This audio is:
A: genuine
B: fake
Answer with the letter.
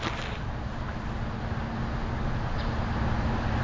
A